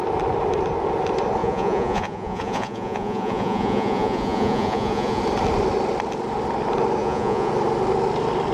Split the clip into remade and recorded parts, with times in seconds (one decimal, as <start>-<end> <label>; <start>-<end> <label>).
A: 0.0-1.4 recorded; 1.4-5.2 remade; 5.2-7.0 recorded; 7.0-7.5 remade; 7.5-8.5 recorded